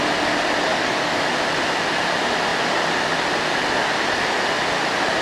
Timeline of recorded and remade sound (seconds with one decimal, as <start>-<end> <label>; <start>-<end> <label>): 0.0-0.7 recorded; 0.7-1.3 remade; 1.3-5.2 recorded